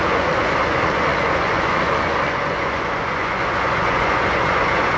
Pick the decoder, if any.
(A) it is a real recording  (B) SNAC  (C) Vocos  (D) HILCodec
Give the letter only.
C